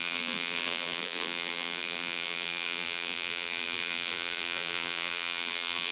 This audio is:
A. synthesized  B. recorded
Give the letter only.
A